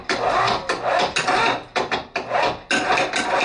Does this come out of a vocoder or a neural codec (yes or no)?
no